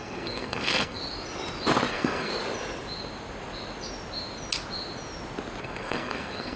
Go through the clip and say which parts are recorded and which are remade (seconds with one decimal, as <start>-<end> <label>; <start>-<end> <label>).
0.0-1.0 remade; 1.0-1.9 recorded; 1.9-2.3 remade; 2.3-5.6 recorded; 5.6-6.6 remade